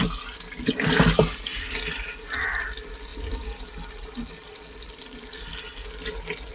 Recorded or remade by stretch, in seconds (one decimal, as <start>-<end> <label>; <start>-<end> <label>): 0.0-6.5 recorded